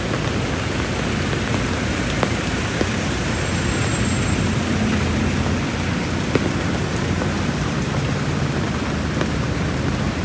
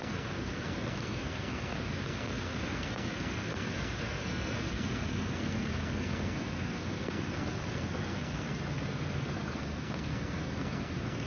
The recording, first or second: first